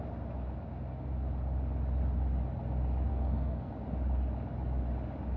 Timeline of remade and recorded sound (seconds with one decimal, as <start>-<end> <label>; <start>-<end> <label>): 0.0-3.1 recorded; 3.1-3.7 remade; 3.7-5.4 recorded